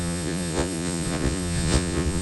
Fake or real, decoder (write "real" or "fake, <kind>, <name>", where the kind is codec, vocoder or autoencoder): fake, vocoder, Vocos